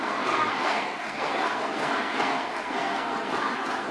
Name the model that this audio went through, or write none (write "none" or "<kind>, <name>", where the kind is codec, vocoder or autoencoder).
codec, SNAC